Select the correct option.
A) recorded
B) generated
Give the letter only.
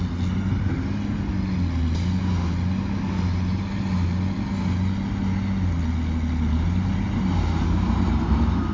A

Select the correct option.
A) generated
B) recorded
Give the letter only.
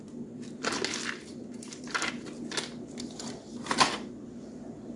B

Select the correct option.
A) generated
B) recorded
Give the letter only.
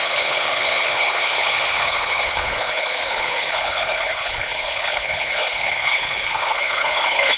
A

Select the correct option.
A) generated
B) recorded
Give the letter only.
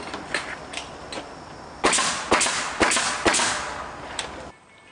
B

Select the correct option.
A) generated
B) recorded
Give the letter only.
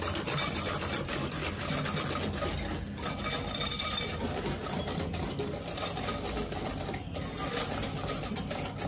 B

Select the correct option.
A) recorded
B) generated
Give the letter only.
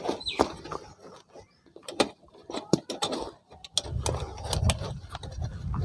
A